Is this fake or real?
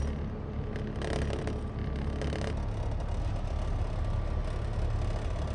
real